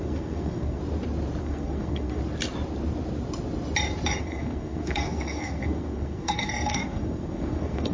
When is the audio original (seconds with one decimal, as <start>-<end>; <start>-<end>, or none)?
0.8-1.4; 2.2-4.2